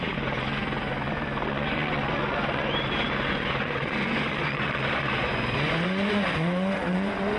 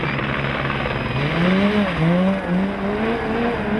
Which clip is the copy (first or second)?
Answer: first